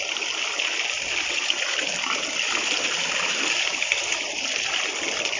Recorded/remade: recorded